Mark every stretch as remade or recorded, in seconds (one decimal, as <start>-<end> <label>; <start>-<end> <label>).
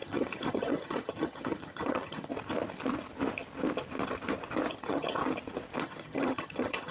0.0-2.3 remade; 2.3-4.7 recorded; 4.7-5.2 remade; 5.2-5.8 recorded; 5.8-6.9 remade